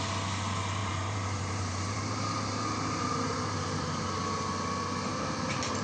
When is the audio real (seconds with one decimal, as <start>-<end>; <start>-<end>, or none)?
0.0-0.8; 4.0-5.8